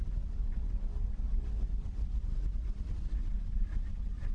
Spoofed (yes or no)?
no